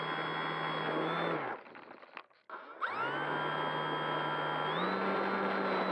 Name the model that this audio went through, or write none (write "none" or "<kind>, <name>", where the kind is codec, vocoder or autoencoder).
none